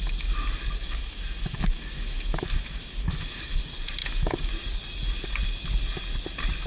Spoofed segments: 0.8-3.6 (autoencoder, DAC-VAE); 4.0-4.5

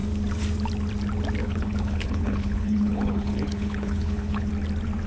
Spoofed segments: 1.4-4.5 (codec, HILCodec)

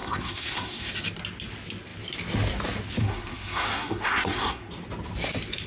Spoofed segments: 0.0-0.9 (codec, SNAC); 3.0-4.7

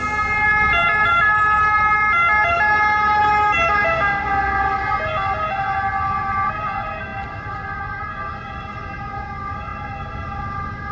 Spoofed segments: none

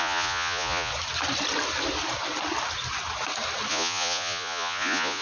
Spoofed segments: 0.0-0.9 (vocoder, Vocos); 3.7-5.2

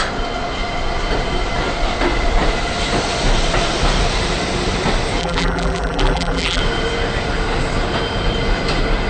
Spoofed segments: 5.2-6.6 (vocoder, BigVGAN v2)